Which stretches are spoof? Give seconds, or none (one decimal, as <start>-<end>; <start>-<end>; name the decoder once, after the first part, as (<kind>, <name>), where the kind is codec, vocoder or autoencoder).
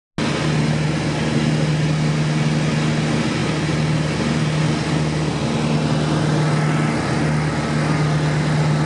none